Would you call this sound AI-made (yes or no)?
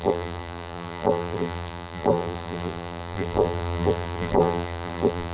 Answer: yes